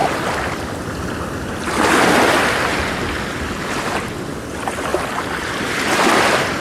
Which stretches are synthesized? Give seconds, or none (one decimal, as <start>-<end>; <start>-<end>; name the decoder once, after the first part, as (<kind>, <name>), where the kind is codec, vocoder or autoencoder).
none